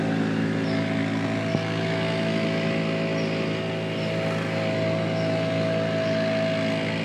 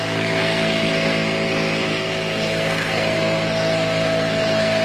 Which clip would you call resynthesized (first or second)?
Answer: second